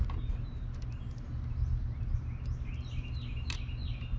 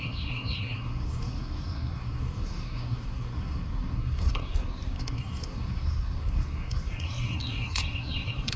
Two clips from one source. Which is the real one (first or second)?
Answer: first